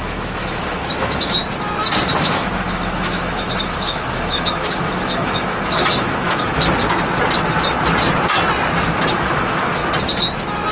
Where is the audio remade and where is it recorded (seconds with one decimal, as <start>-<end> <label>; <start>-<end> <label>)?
0.0-1.4 remade; 1.4-2.1 recorded; 2.1-6.5 remade; 6.5-9.1 recorded; 9.1-9.8 remade; 9.8-10.7 recorded

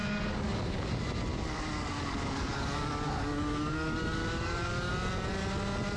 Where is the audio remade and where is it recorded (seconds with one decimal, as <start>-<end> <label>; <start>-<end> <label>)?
0.0-0.9 remade; 0.9-1.3 recorded; 1.3-4.9 remade; 4.9-6.0 recorded

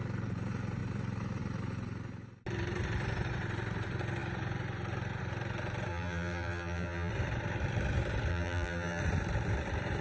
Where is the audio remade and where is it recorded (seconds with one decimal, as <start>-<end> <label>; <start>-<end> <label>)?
0.0-5.9 recorded; 5.9-7.1 remade; 7.1-8.3 recorded; 8.3-9.0 remade; 9.0-10.0 recorded

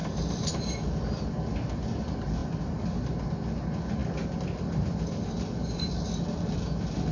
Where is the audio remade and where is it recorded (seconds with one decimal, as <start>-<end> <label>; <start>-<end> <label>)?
0.0-7.1 recorded

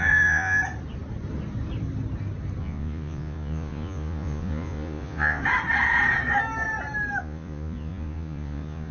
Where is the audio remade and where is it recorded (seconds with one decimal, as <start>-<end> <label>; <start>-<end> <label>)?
0.0-0.6 remade; 0.6-2.6 recorded; 2.6-5.4 remade; 5.4-7.2 recorded; 7.2-8.9 remade

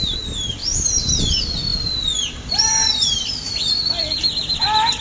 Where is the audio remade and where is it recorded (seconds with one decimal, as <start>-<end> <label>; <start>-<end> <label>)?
0.0-0.6 recorded; 0.6-1.2 remade; 1.2-1.7 recorded; 1.7-5.0 remade